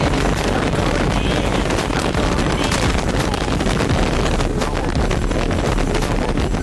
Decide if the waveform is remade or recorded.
remade